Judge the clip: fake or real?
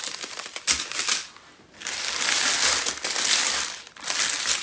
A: real